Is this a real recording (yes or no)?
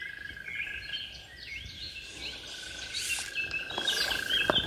yes